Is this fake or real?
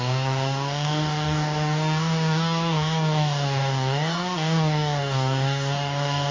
fake